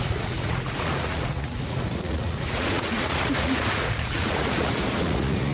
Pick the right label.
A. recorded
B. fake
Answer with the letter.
B